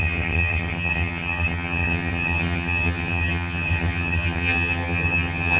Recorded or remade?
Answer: remade